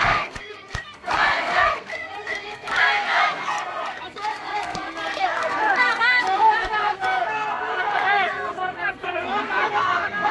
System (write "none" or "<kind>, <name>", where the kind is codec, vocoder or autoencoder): codec, SNAC